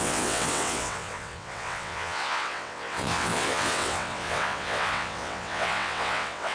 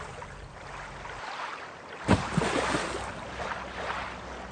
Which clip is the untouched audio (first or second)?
second